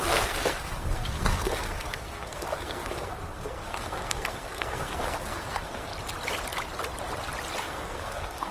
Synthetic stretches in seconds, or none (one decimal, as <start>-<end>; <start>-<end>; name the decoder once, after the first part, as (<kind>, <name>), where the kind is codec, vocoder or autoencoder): 0.0-5.9 (codec, SNAC); 7.6-8.5

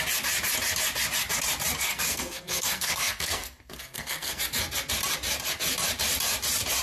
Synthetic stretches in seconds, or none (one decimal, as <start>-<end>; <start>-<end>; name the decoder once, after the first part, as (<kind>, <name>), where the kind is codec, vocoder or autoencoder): 1.9-4.4 (codec, SNAC)

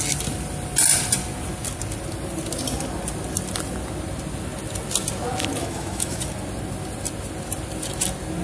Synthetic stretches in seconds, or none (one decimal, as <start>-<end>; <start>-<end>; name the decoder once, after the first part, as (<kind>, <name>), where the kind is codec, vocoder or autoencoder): 5.6-6.2 (autoencoder, DAC-VAE)

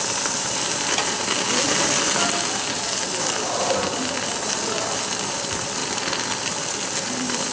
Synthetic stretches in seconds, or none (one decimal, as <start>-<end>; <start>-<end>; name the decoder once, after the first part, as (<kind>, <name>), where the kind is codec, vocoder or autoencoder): 0.0-1.0 (vocoder, BigVGAN v2); 5.3-5.8; 6.5-7.5

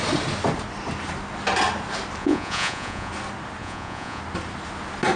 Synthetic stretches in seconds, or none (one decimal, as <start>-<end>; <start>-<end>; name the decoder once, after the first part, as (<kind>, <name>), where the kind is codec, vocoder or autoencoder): 2.2-3.1 (vocoder, Vocos); 3.6-4.2

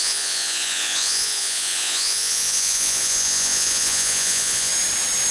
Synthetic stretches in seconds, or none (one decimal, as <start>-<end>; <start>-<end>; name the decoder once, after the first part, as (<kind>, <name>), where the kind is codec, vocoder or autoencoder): 0.0-4.7 (vocoder, Vocos)

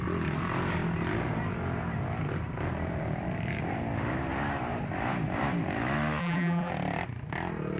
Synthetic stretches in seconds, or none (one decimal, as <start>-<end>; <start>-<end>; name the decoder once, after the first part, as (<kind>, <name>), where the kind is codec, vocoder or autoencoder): 6.2-6.7 (vocoder, BigVGAN v2)

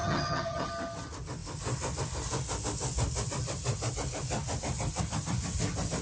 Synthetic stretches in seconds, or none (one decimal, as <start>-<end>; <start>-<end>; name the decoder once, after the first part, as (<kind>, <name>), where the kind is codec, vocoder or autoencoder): 0.0-0.7 (vocoder, HiFi-GAN)